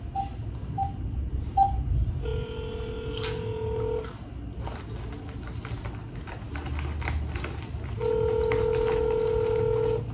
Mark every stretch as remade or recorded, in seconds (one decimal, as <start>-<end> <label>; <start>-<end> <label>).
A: 0.0-10.1 recorded